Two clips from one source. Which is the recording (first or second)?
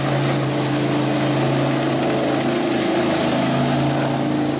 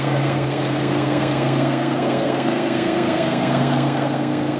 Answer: first